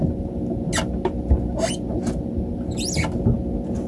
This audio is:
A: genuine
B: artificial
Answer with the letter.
A